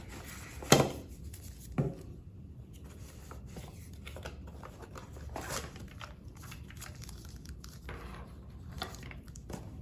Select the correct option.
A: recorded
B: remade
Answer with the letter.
B